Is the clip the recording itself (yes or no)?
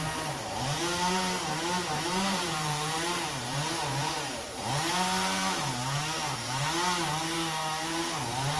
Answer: no